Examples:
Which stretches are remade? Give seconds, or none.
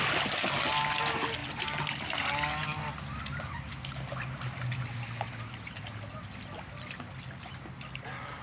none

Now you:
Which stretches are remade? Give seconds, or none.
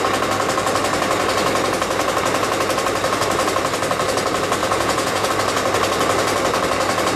4.6-5.3 (vocoder, Vocos)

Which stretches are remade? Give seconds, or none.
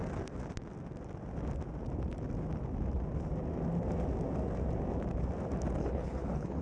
5.8-6.6 (codec, HILCodec)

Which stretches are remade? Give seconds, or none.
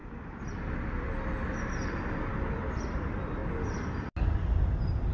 2.5-3.4 (vocoder, BigVGAN v2)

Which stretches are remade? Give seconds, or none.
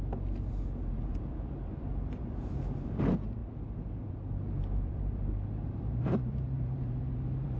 0.0-3.4 (vocoder, BigVGAN v2); 4.1-7.6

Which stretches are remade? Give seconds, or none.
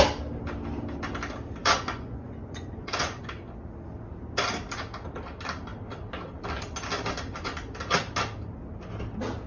1.6-3.2 (vocoder, Vocos)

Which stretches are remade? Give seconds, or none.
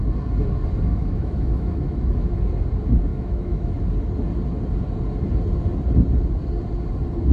0.9-2.4 (autoencoder, DAC-VAE); 3.1-3.8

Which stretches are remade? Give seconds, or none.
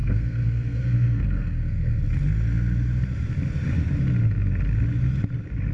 0.0-2.0 (codec, SNAC)